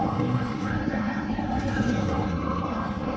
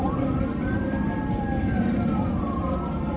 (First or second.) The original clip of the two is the second